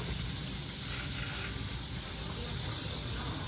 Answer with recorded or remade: recorded